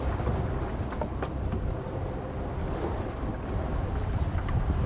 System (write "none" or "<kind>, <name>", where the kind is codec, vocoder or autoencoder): none